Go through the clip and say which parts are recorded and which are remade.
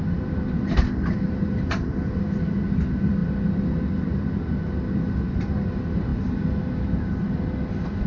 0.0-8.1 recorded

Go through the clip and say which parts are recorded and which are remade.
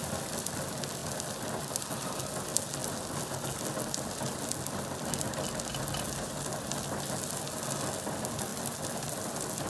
0.0-9.7 recorded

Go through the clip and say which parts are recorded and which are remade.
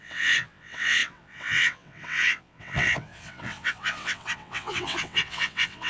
0.0-5.9 remade